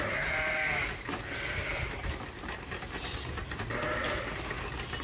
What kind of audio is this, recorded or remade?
recorded